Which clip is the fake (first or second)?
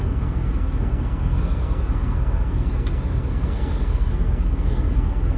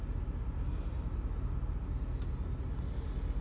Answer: first